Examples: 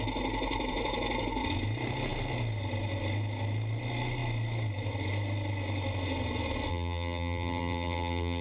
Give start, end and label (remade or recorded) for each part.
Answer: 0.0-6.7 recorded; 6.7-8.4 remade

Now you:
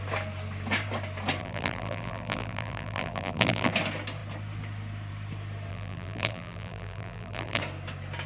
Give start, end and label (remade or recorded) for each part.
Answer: 0.0-1.4 recorded; 1.4-3.7 remade; 3.7-5.7 recorded; 5.7-7.6 remade; 7.6-8.3 recorded

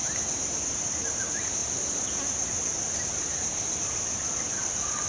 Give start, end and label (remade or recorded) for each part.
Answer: 0.0-0.8 remade; 0.8-5.1 recorded

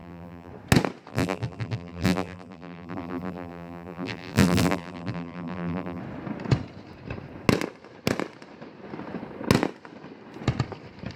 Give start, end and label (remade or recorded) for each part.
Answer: 0.0-0.5 remade; 0.5-1.1 recorded; 1.1-6.0 remade; 6.0-11.2 recorded

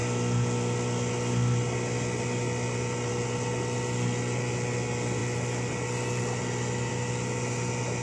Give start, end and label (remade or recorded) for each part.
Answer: 0.0-8.0 recorded

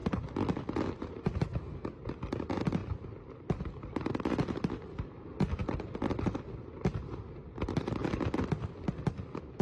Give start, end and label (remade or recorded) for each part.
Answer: 0.0-1.1 remade; 1.1-8.0 recorded; 8.0-8.7 remade; 8.7-9.6 recorded